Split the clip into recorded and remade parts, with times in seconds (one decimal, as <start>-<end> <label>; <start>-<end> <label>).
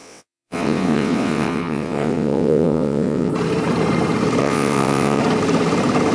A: 0.0-3.3 remade; 3.3-4.4 recorded; 4.4-5.2 remade; 5.2-6.1 recorded